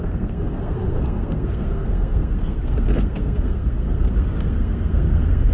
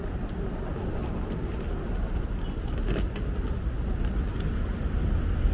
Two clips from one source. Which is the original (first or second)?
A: second